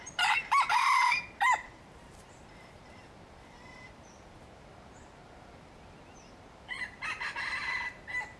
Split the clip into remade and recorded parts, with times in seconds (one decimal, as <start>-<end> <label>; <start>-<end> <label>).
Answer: 0.0-8.4 remade